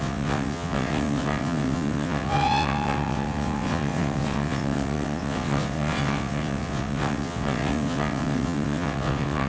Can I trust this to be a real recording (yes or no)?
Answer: no